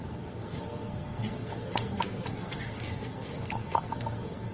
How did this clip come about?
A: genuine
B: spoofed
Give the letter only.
B